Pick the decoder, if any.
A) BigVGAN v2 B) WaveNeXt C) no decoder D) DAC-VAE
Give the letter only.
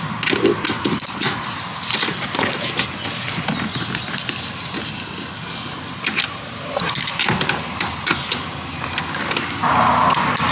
C